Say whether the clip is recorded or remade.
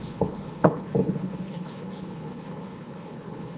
remade